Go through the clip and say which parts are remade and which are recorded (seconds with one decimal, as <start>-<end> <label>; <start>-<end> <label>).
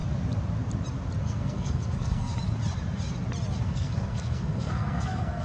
0.0-1.2 recorded; 1.2-2.3 remade; 2.3-3.6 recorded; 3.6-5.4 remade